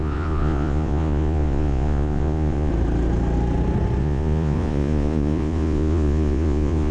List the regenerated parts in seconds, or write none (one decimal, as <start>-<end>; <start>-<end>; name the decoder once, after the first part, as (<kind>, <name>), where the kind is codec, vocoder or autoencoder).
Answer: 0.0-2.7 (vocoder, Vocos); 4.0-6.9